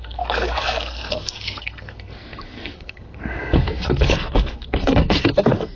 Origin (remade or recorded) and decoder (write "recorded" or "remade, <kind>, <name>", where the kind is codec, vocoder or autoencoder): remade, codec, SNAC